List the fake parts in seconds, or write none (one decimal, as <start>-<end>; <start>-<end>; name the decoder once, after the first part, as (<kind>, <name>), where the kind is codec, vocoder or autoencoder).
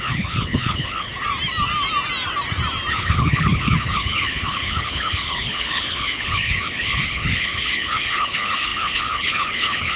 0.0-1.1 (codec, HILCodec); 2.9-10.0